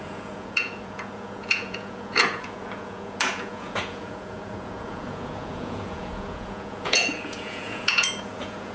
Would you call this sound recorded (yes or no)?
no